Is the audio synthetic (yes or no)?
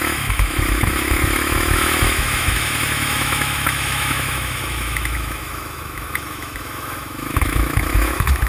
yes